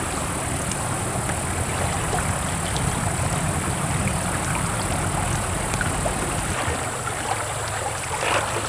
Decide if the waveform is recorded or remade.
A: recorded